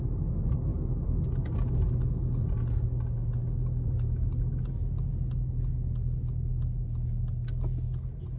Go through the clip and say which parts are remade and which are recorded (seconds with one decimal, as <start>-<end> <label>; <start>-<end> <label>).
0.0-8.4 recorded